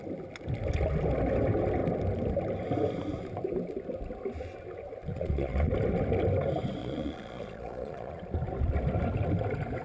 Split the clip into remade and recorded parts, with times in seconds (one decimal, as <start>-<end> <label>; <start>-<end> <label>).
0.0-5.1 recorded; 5.1-5.7 remade; 5.7-6.8 recorded; 6.8-8.2 remade; 8.2-9.8 recorded